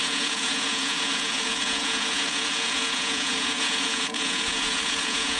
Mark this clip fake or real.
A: fake